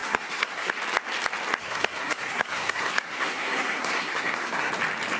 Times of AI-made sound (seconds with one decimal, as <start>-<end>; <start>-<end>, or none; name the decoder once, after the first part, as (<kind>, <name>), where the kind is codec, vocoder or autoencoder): 0.0-0.7 (codec, SNAC); 1.6-4.7